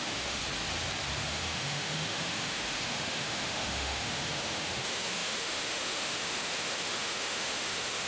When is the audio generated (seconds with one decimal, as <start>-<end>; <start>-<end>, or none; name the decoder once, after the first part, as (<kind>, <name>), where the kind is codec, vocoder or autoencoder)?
0.0-0.4 (autoencoder, DAC-VAE); 1.3-8.1